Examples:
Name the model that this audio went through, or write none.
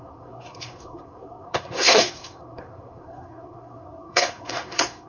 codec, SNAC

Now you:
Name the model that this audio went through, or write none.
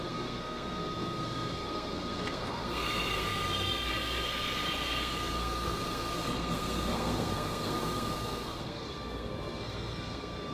codec, SNAC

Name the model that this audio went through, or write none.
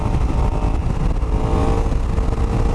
none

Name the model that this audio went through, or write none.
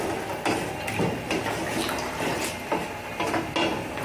none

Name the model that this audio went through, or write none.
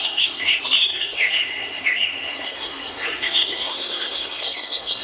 codec, SNAC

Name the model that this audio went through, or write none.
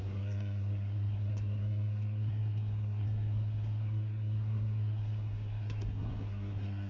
codec, SNAC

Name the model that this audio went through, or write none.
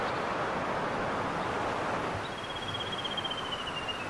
none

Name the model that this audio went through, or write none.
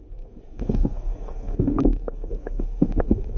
codec, SNAC